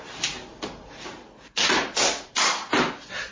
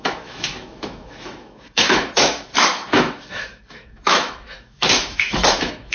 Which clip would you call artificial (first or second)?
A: second